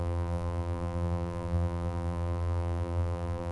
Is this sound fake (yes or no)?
yes